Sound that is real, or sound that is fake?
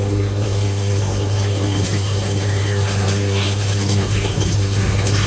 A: fake